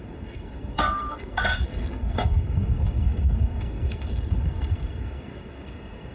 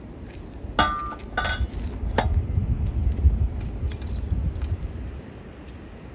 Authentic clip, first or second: second